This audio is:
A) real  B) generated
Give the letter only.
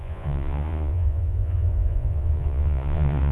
B